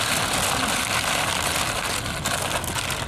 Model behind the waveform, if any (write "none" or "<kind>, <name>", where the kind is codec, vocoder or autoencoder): none